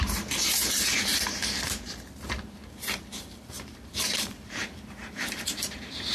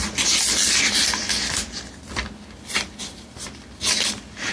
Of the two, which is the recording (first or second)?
second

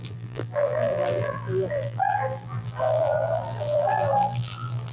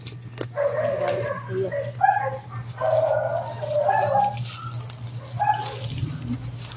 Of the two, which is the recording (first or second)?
second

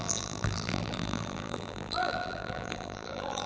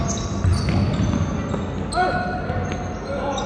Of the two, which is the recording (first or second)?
second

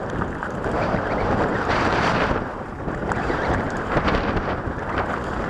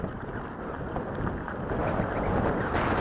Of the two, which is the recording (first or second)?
second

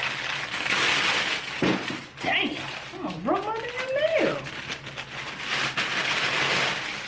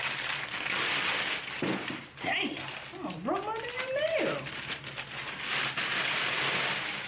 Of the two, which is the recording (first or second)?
first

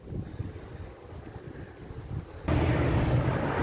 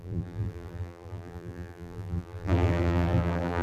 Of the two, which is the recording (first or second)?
first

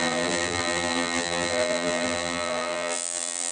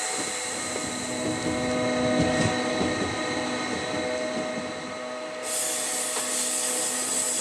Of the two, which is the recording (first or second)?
second